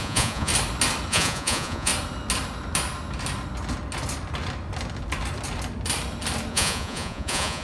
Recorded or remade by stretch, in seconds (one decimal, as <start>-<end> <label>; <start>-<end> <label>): 0.0-0.5 remade; 0.5-1.1 recorded; 1.1-1.9 remade; 1.9-6.5 recorded; 6.5-7.6 remade